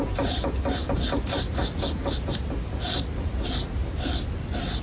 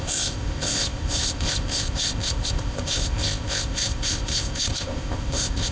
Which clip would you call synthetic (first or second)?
second